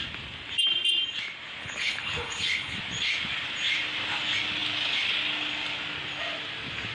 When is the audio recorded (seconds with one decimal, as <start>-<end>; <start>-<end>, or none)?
0.0-1.6; 2.8-6.9